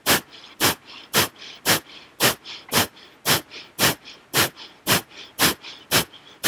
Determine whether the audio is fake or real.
real